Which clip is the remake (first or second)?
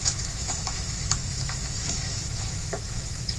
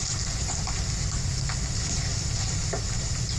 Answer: first